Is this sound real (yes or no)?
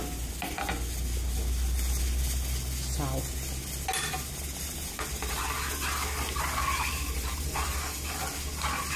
yes